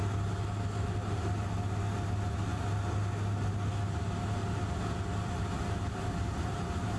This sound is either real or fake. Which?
real